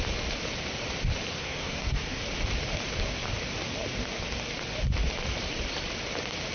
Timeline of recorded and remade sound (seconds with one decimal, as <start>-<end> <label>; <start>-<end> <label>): 0.0-1.3 recorded; 1.3-2.2 remade; 2.2-6.5 recorded